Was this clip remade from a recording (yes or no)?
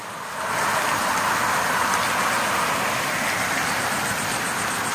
no